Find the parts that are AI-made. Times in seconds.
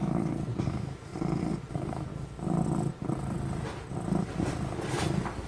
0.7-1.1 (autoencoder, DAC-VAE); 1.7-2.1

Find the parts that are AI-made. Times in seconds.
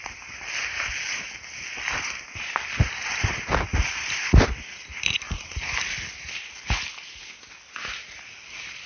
3.7-4.6 (vocoder, BigVGAN v2)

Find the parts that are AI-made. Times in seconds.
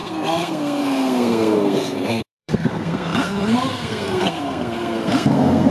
0.0-5.7 (codec, SNAC)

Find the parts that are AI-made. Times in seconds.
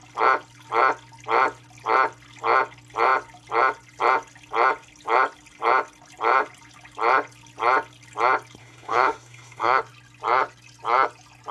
8.6-9.8 (autoencoder, DAC-VAE)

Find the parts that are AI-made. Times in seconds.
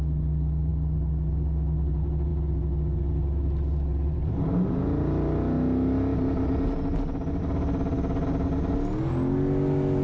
none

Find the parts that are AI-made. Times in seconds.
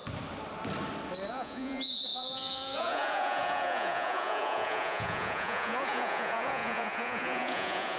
1.3-8.0 (vocoder, Vocos)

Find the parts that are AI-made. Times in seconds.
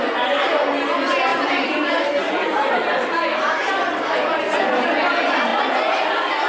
1.3-3.7 (vocoder, BigVGAN v2)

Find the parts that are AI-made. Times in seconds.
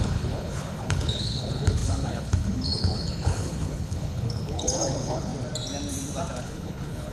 0.0-5.3 (codec, HILCodec); 6.4-7.1